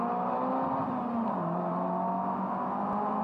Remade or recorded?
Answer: recorded